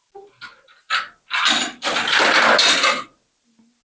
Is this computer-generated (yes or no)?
no